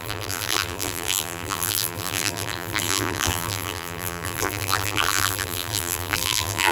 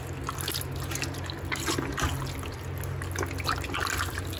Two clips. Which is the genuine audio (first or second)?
second